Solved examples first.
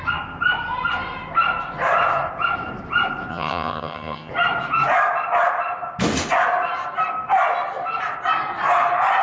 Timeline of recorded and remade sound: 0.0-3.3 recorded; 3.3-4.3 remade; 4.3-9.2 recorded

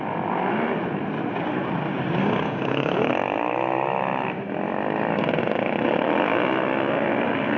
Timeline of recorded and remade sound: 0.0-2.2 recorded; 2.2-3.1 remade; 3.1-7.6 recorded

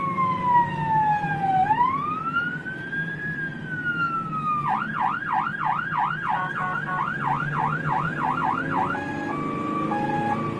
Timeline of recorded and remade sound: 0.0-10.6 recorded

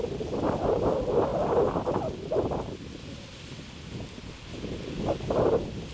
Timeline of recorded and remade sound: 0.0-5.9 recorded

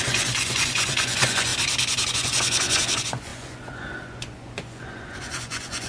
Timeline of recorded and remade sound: 0.0-1.5 remade; 1.5-2.1 recorded; 2.1-5.9 remade

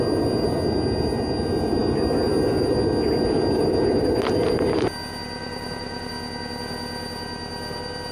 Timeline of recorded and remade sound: 0.0-5.4 recorded; 5.4-6.1 remade; 6.1-8.1 recorded

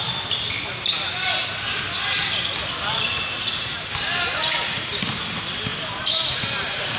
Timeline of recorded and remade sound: 0.0-5.7 recorded; 5.7-6.4 remade; 6.4-7.0 recorded

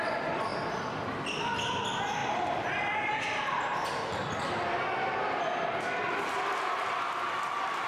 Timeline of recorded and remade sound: 0.0-7.9 recorded